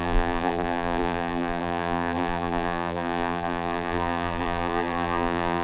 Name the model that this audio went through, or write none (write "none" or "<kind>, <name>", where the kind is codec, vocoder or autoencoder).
vocoder, BigVGAN v2